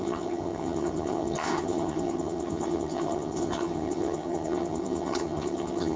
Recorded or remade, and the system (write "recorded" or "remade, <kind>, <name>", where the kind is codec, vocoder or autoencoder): remade, vocoder, HiFi-GAN